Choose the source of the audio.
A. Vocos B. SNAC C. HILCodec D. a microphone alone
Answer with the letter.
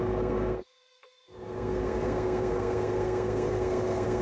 B